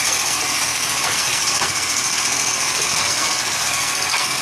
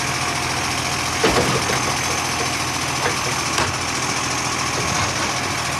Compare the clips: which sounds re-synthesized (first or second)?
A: first